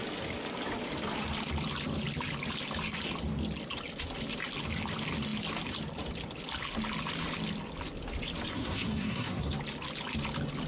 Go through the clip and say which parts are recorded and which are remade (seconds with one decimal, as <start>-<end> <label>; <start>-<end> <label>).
0.0-8.5 recorded; 8.5-9.5 remade; 9.5-10.7 recorded